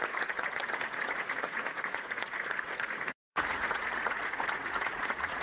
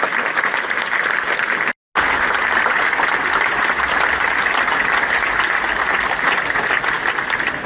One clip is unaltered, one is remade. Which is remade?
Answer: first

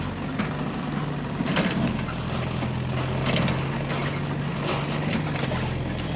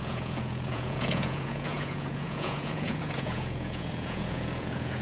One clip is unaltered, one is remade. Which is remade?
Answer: second